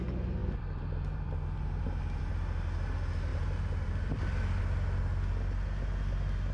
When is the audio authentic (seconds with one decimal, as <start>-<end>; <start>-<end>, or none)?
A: 0.0-0.4; 2.3-3.3; 4.6-6.5